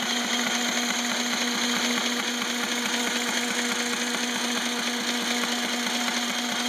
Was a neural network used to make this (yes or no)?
no